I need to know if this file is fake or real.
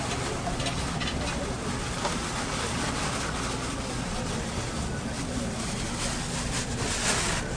real